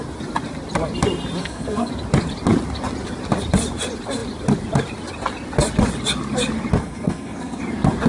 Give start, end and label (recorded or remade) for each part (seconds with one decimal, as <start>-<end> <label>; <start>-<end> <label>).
0.0-1.4 recorded; 1.4-1.9 remade; 1.9-6.8 recorded; 6.8-7.6 remade; 7.6-8.1 recorded